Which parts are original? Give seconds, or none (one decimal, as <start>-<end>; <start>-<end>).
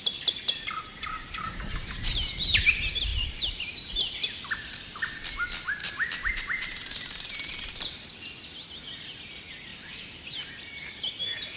0.0-0.8; 1.6-3.1; 3.9-5.8; 8.1-9.7; 10.5-11.6